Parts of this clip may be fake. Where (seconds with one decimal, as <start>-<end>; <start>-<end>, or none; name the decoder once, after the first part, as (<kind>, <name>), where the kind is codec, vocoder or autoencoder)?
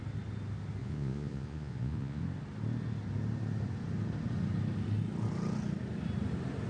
0.8-2.2 (vocoder, Vocos)